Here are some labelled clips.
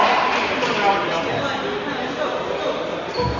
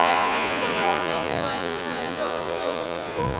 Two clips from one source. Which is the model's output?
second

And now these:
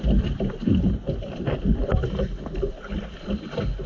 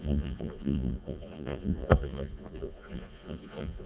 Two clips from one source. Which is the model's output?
second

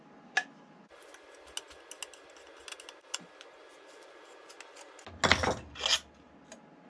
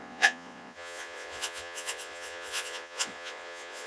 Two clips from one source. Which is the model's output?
second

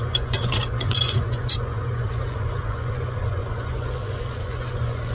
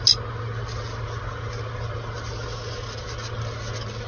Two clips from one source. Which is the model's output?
first